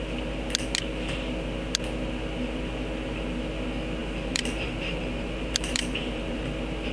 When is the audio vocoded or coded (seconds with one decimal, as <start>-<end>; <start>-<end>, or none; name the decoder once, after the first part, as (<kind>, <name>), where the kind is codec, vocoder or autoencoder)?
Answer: 4.0-6.4 (vocoder, BigVGAN v2)